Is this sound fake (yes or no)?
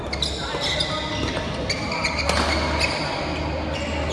no